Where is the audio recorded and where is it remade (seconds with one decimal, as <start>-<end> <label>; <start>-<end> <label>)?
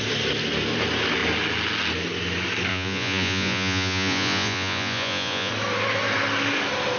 0.0-2.7 recorded; 2.7-5.5 remade; 5.5-7.0 recorded